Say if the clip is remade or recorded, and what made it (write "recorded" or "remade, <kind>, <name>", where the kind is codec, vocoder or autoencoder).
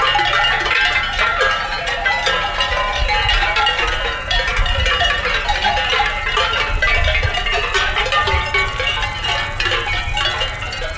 remade, vocoder, BigVGAN v2